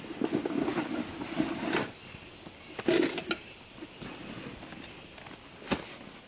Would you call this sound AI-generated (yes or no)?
no